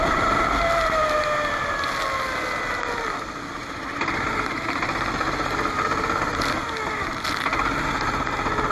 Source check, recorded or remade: recorded